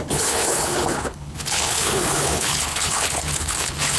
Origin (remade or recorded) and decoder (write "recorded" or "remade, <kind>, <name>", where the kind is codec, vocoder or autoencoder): remade, codec, HILCodec